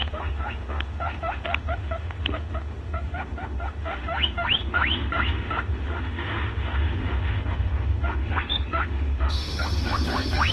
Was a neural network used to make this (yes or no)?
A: yes